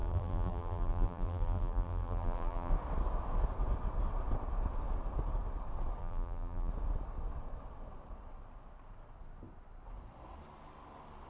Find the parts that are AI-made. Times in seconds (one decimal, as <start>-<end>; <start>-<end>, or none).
0.0-2.7; 6.0-6.7